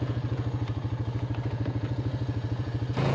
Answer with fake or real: fake